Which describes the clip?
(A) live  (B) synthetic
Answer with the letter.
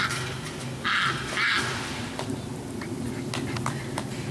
A